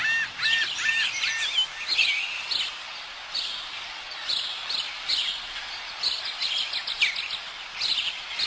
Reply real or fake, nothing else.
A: real